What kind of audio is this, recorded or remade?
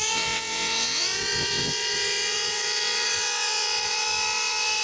remade